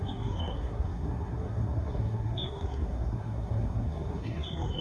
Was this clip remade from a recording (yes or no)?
yes